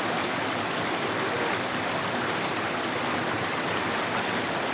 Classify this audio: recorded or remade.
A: recorded